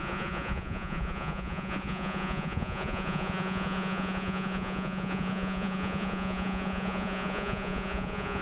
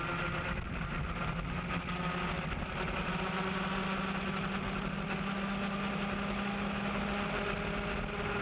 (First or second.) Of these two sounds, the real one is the second